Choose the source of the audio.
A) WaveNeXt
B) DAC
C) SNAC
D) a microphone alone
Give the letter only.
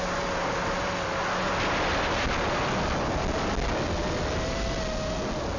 D